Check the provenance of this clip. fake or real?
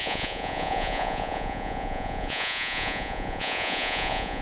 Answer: fake